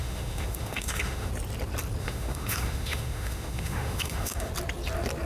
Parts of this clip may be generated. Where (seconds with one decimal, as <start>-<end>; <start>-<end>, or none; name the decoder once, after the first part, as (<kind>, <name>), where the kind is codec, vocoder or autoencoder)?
0.0-1.3 (autoencoder, DAC-VAE); 2.0-4.5